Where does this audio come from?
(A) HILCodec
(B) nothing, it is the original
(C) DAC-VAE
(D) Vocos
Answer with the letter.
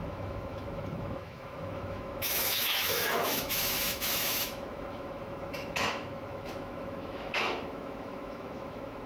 C